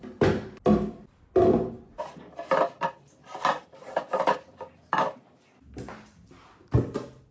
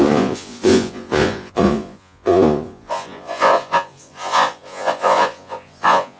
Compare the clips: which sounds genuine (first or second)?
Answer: first